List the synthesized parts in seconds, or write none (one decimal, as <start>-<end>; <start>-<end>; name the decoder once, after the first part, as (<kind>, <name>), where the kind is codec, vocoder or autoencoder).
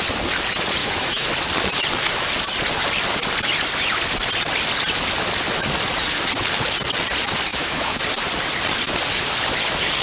0.8-1.3 (autoencoder, DAC-VAE); 7.5-8.0